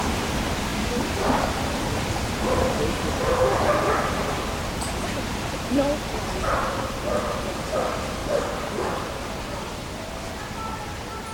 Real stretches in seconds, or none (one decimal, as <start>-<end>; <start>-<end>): none